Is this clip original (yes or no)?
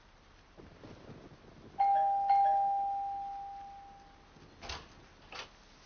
yes